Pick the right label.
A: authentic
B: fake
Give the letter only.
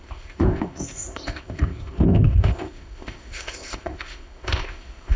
B